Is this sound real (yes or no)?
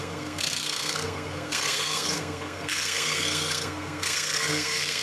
no